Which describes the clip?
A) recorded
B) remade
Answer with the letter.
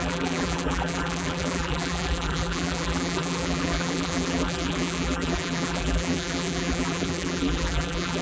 B